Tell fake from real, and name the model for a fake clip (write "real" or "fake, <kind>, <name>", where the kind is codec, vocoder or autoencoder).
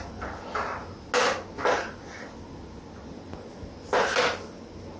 real